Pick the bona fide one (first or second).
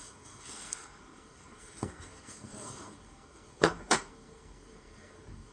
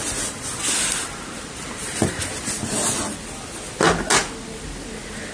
second